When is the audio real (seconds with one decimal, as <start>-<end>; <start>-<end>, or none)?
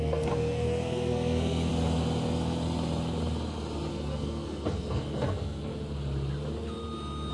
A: 1.7-3.9; 5.7-7.3